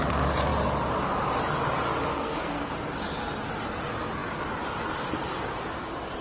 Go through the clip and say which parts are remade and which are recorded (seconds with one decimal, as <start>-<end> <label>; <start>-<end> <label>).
0.0-2.1 recorded; 2.1-2.7 remade; 2.7-6.2 recorded